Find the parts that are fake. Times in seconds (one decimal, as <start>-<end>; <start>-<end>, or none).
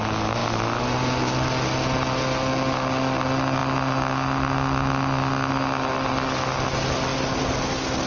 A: none